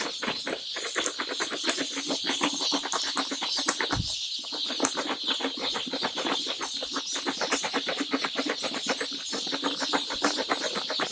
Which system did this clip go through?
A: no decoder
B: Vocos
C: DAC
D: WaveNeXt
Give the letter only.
A